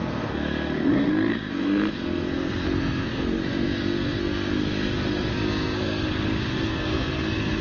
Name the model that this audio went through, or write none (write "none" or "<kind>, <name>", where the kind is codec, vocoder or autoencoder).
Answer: codec, SNAC